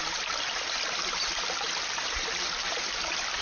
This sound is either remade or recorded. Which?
recorded